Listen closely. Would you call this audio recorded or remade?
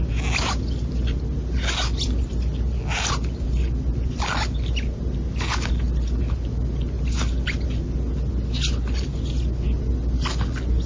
recorded